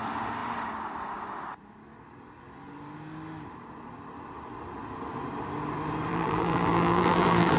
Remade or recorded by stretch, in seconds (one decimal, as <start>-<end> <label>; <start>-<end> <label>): 0.0-6.1 recorded; 6.1-7.6 remade